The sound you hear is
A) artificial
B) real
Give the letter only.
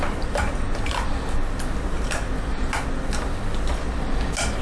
B